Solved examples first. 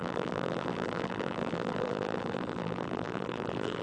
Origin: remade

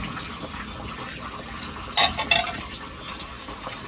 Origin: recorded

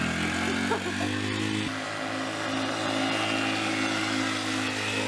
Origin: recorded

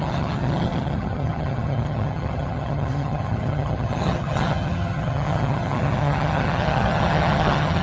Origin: remade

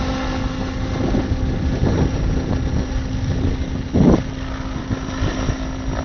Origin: recorded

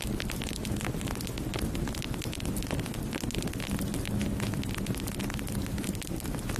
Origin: recorded